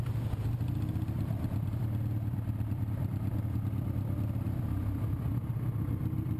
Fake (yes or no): no